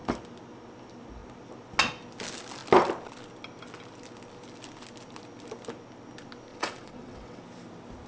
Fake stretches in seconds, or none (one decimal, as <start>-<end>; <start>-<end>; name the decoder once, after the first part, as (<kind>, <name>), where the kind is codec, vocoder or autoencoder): 6.5-7.4 (vocoder, WaveNeXt)